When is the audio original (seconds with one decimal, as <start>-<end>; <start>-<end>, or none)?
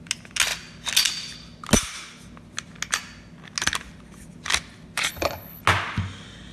0.0-5.1; 5.6-6.5